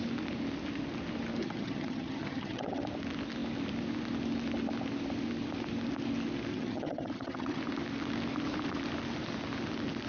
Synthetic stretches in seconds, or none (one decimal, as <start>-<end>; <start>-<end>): 1.4-2.8; 6.5-7.6